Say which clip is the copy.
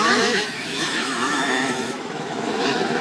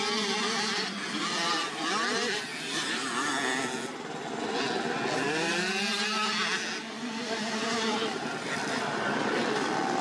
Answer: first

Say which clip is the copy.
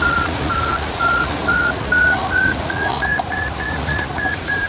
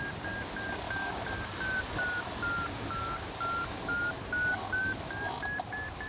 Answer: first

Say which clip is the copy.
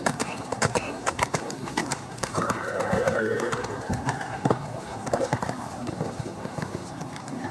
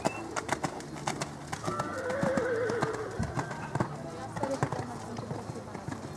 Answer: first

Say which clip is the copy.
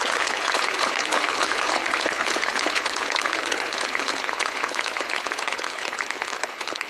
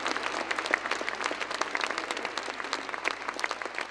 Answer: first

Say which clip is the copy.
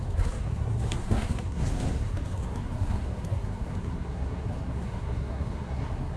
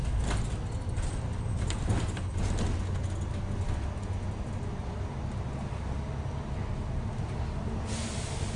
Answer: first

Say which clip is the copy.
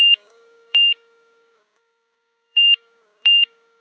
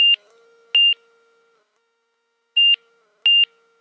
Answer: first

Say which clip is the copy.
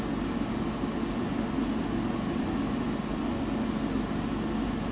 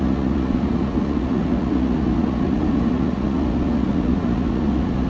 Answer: second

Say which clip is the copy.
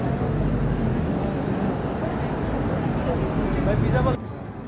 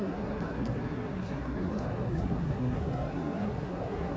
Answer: second